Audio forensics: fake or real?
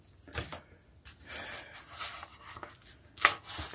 real